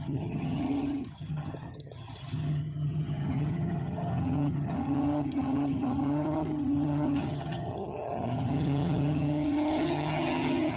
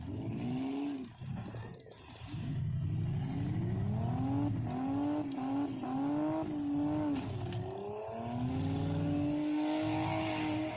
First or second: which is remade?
first